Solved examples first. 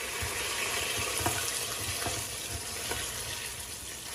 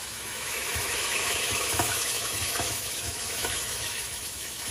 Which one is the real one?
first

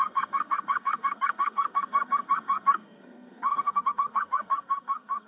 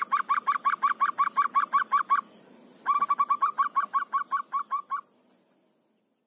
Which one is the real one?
second